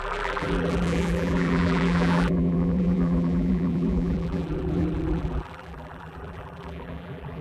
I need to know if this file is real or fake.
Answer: fake